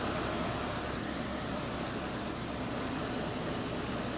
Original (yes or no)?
yes